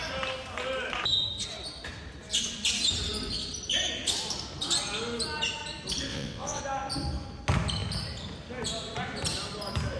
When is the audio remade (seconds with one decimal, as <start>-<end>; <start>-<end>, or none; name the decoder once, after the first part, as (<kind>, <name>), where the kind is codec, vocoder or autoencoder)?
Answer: 6.1-6.6 (vocoder, WaveNeXt)